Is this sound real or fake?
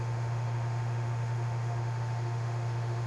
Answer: fake